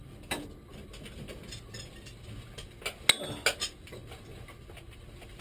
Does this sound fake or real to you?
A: real